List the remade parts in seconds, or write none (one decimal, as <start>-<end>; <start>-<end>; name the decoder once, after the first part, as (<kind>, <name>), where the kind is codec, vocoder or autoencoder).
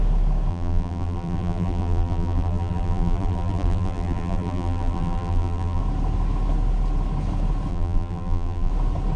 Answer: 0.5-5.8 (vocoder, BigVGAN v2); 7.7-8.7